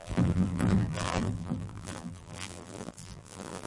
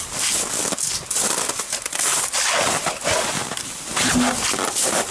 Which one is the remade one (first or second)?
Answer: first